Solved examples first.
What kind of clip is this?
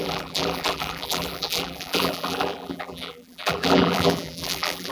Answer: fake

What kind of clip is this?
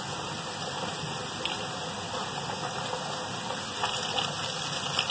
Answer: real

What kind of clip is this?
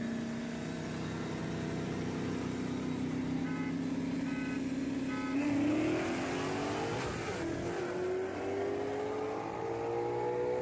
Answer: real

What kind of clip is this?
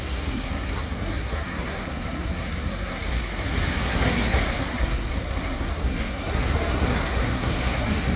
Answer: fake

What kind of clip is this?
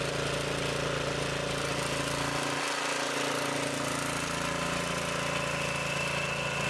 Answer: real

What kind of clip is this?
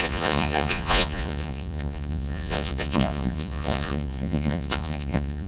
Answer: fake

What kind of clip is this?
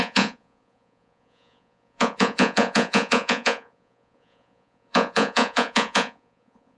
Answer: fake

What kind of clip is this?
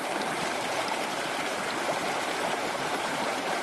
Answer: fake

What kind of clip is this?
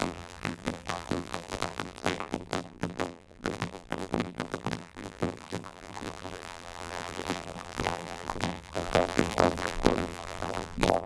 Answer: fake